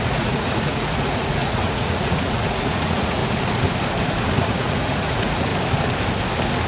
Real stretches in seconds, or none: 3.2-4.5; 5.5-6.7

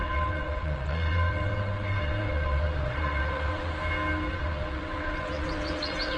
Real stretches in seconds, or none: 3.7-4.3

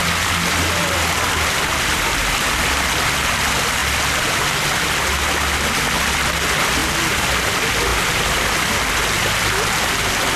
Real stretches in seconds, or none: 0.0-10.4

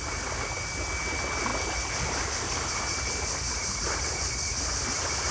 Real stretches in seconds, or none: 0.0-5.3

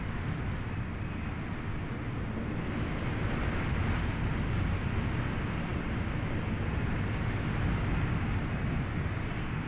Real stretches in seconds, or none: 0.0-9.7

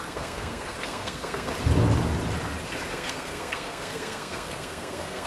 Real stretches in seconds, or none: 1.5-2.9

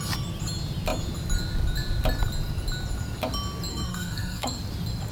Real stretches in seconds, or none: 0.0-3.7; 4.6-5.1

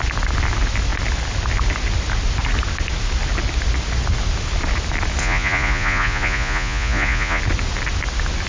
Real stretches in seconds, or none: 0.0-5.2; 7.4-8.5